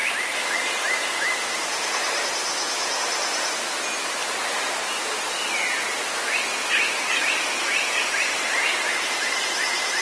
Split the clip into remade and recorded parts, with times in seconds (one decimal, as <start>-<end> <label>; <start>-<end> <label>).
0.0-2.5 recorded; 2.5-3.0 remade; 3.0-10.0 recorded